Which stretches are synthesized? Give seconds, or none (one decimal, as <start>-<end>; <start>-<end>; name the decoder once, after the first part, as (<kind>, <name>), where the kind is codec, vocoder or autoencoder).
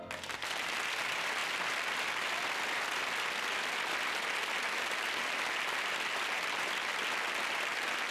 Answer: none